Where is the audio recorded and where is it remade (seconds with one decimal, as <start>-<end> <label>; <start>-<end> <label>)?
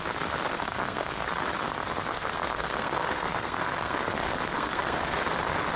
0.0-0.5 recorded; 0.5-1.3 remade; 1.3-2.1 recorded; 2.1-5.3 remade; 5.3-5.8 recorded